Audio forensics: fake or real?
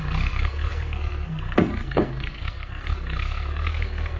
fake